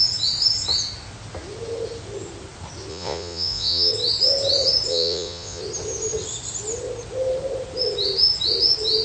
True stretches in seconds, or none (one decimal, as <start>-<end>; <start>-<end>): 0.0-2.9; 3.9-4.9; 5.6-9.0